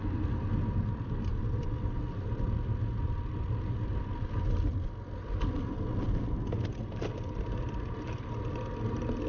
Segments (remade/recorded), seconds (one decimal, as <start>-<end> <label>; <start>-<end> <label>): 0.0-9.3 recorded